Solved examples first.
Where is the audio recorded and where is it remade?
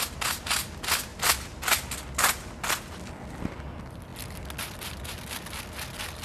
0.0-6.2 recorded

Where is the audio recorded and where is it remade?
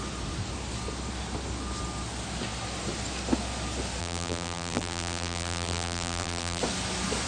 0.0-4.0 recorded; 4.0-6.6 remade; 6.6-7.3 recorded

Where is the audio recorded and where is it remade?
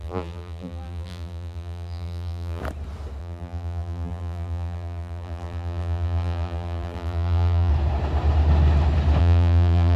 0.0-2.6 remade; 2.6-3.2 recorded; 3.2-7.7 remade; 7.7-9.2 recorded; 9.2-10.0 remade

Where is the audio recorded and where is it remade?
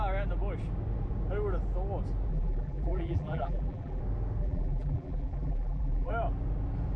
0.0-2.3 recorded; 2.3-4.0 remade; 4.0-4.4 recorded; 4.4-6.1 remade; 6.1-7.0 recorded